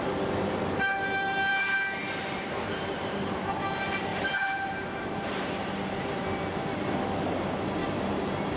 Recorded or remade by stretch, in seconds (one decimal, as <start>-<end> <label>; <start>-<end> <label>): 0.0-1.5 recorded; 1.5-3.5 remade; 3.5-4.1 recorded; 4.1-6.5 remade; 6.5-8.6 recorded